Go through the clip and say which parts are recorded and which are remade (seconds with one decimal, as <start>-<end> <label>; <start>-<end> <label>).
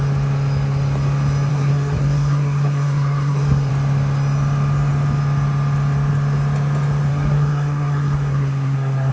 0.0-1.5 recorded; 1.5-3.7 remade; 3.7-7.1 recorded; 7.1-9.1 remade